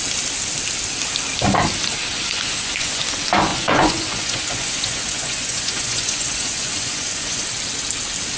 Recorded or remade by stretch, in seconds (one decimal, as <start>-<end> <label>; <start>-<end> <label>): 0.0-2.1 recorded; 2.1-3.0 remade; 3.0-3.5 recorded; 3.5-7.4 remade; 7.4-8.4 recorded